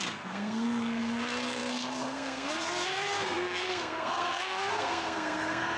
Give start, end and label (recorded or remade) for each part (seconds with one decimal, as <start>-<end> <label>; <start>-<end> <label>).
0.0-5.8 remade